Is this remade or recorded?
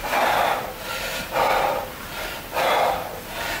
recorded